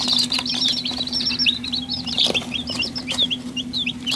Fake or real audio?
fake